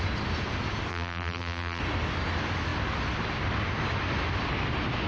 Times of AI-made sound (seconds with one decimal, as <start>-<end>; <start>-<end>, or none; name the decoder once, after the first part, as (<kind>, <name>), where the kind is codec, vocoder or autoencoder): 0.9-1.8 (vocoder, BigVGAN v2)